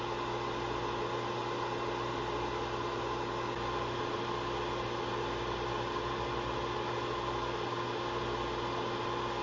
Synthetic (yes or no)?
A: no